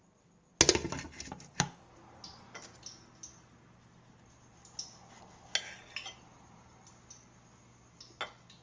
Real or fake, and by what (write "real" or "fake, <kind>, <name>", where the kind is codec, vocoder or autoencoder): real